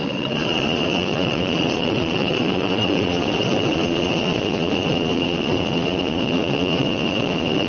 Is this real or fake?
fake